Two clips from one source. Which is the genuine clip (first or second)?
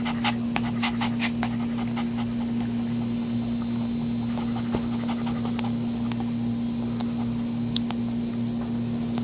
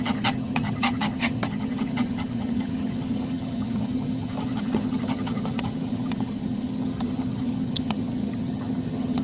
first